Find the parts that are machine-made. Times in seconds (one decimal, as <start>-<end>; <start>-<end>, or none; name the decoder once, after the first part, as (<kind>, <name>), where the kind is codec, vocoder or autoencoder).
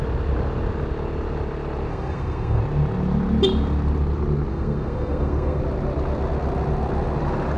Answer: 1.9-2.6 (codec, SNAC); 4.5-5.6